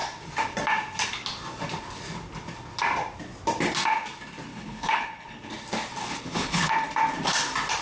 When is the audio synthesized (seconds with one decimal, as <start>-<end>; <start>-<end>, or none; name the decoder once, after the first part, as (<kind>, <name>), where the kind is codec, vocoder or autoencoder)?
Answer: 4.5-5.5 (codec, HILCodec); 6.0-6.7